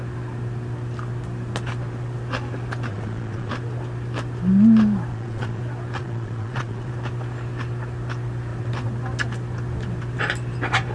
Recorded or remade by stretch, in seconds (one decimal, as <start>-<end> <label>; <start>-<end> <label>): 0.0-2.9 recorded; 2.9-3.5 remade; 3.5-5.1 recorded; 5.1-5.6 remade; 5.6-6.0 recorded; 6.0-6.9 remade; 6.9-10.9 recorded